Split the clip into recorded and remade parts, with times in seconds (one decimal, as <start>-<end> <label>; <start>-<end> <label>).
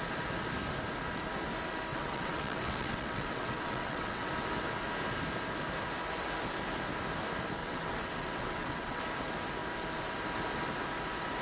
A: 0.0-1.9 recorded; 1.9-4.3 remade; 4.3-7.6 recorded; 7.6-9.0 remade; 9.0-11.4 recorded